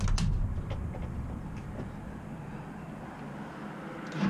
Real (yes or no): yes